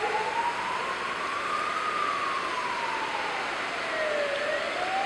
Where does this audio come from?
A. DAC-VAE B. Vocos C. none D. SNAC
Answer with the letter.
C